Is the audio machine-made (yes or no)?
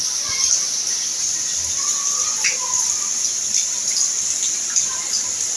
no